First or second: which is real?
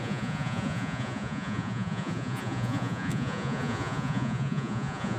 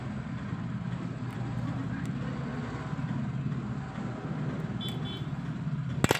second